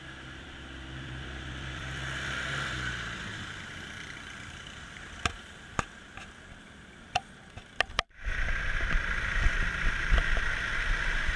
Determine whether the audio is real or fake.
fake